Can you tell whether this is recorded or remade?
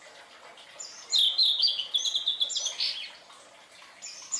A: recorded